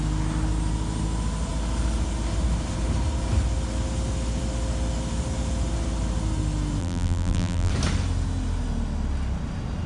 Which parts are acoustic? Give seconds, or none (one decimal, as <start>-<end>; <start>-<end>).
0.0-6.8; 7.7-9.9